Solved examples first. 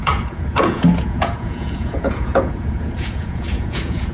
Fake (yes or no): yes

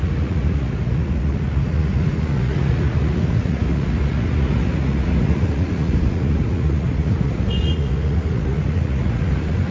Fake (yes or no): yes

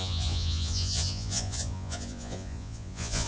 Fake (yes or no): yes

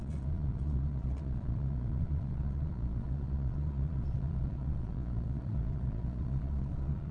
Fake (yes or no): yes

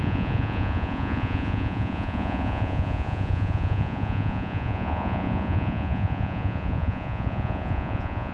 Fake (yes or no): yes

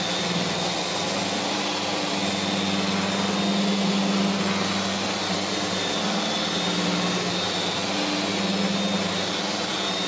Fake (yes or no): no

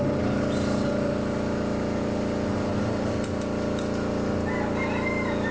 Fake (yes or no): no